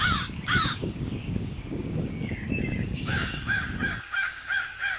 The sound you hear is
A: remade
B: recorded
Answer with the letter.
A